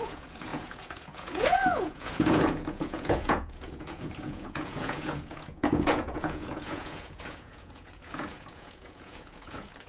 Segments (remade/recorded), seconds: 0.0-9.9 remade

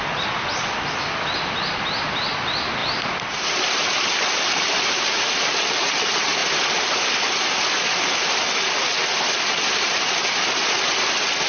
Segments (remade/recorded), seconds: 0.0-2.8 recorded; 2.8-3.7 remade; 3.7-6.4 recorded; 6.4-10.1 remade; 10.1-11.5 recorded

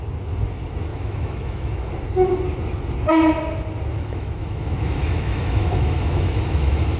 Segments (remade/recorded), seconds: 0.0-0.9 recorded; 0.9-1.9 remade; 1.9-3.9 recorded; 3.9-7.0 remade

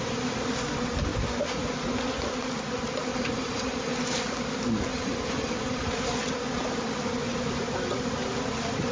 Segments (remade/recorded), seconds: 0.0-3.1 recorded; 3.1-4.0 remade; 4.0-4.9 recorded; 4.9-5.9 remade; 5.9-8.9 recorded

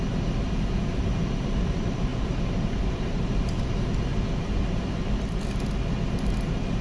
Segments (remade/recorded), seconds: 0.0-6.8 recorded